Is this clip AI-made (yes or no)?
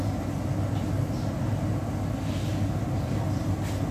no